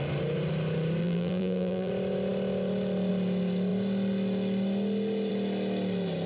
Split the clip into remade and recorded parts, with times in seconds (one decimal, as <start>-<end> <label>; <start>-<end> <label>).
0.0-1.0 recorded; 1.0-1.9 remade; 1.9-6.3 recorded